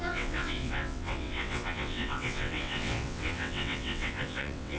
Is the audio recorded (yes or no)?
no